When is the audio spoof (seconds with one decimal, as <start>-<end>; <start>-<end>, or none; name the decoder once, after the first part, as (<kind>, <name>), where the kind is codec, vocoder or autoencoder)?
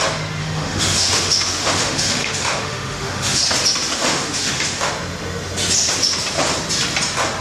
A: 0.4-3.4 (autoencoder, DAC-VAE); 3.9-4.9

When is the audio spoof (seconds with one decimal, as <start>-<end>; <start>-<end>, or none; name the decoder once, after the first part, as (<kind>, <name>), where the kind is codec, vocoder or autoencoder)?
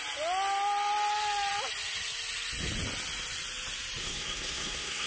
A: 4.0-5.1 (codec, SNAC)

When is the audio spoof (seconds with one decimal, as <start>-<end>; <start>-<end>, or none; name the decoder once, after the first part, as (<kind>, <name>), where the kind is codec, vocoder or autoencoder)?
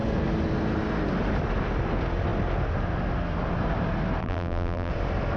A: 4.2-4.9 (vocoder, BigVGAN v2)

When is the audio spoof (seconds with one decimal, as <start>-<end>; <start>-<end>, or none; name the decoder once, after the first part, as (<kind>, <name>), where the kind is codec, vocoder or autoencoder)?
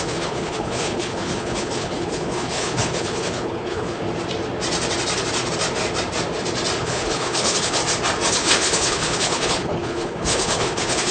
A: 0.0-4.0 (codec, HILCodec); 6.8-7.8; 8.3-11.1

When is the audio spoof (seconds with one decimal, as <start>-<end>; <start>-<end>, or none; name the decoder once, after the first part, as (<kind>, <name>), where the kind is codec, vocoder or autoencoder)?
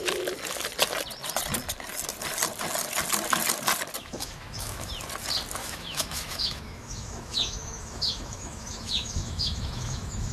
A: 4.0-4.9 (autoencoder, DAC-VAE); 5.6-10.3